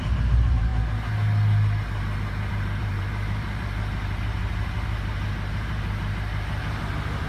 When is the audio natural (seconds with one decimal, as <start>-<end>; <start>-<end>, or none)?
0.7-2.5